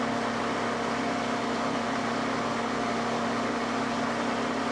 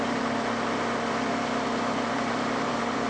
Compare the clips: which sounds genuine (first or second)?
first